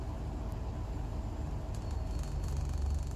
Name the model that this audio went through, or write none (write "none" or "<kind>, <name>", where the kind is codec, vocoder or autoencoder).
none